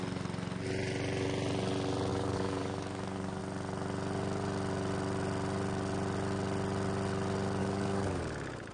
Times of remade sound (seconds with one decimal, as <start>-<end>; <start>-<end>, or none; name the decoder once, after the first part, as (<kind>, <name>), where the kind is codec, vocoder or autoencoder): 2.1-3.4 (codec, DAC); 7.6-8.2